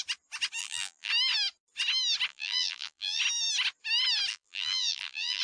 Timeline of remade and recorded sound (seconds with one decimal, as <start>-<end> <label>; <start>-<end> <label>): 0.0-0.6 recorded; 0.6-1.1 remade; 1.1-2.3 recorded; 2.3-3.2 remade; 3.2-4.3 recorded; 4.3-5.4 remade